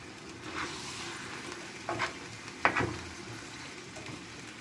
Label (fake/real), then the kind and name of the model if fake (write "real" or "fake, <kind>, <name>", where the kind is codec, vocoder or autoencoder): real